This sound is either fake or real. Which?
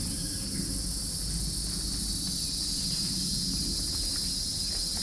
real